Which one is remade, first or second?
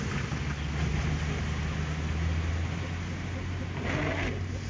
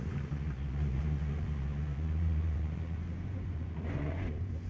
second